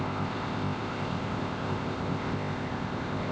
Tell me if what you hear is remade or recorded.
remade